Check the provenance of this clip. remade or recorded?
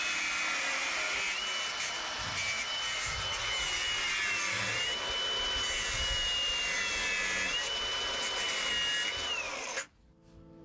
recorded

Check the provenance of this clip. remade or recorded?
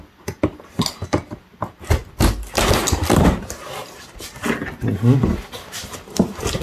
recorded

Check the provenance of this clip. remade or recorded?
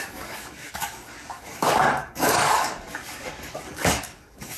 remade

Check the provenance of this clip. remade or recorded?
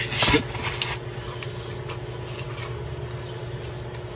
recorded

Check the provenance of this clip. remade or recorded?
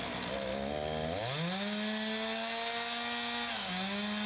recorded